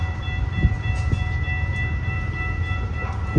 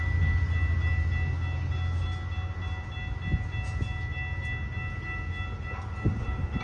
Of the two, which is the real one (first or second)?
second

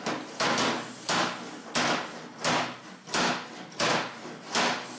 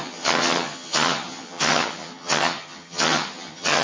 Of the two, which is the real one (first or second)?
first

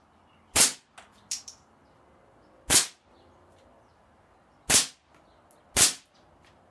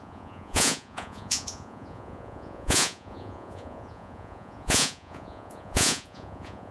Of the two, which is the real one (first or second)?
first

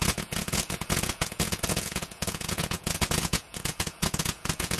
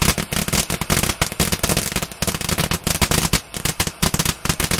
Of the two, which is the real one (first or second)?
second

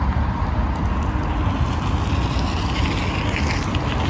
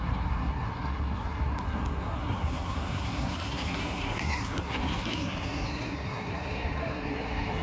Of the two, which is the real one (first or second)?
first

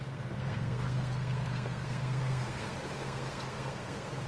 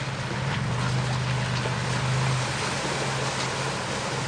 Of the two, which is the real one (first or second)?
second